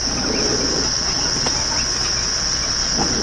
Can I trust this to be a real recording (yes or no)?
yes